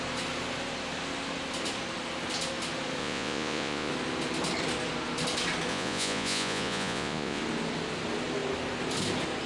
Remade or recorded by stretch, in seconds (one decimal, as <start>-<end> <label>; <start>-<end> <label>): 0.0-3.0 recorded; 3.0-3.9 remade; 3.9-5.7 recorded; 5.7-7.4 remade; 7.4-9.5 recorded